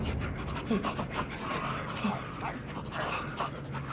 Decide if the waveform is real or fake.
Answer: real